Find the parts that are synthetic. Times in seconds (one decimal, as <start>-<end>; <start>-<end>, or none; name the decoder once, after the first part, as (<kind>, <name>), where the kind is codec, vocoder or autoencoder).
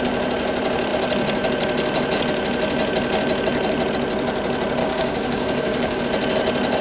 4.8-6.0 (codec, DAC)